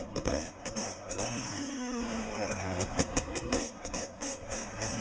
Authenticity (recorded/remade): remade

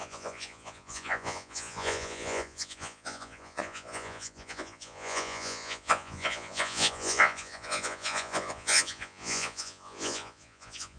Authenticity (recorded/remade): remade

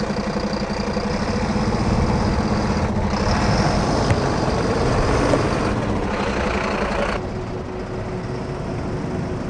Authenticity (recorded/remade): recorded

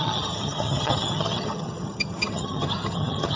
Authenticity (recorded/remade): remade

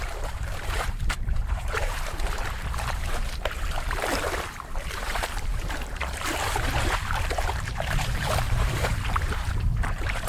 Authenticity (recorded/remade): remade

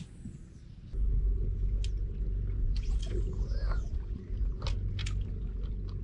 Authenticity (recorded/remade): recorded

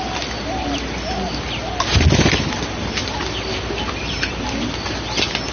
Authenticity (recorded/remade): recorded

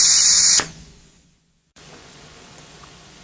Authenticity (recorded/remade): remade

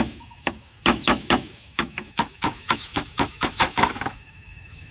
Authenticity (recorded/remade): remade